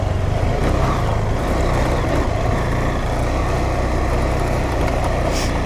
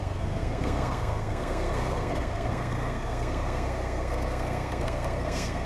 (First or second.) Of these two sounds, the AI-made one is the second